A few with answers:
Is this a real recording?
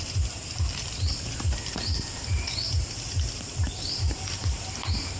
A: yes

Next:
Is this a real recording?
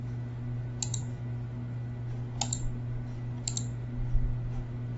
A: yes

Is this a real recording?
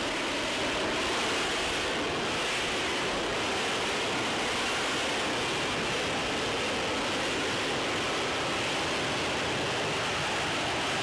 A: yes